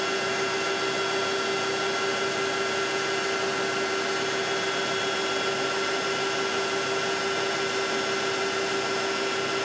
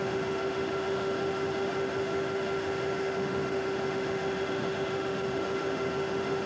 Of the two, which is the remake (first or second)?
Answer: second